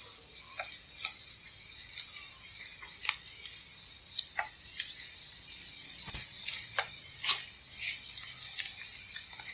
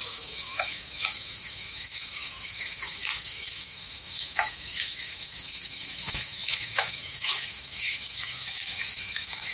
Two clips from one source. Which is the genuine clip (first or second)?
first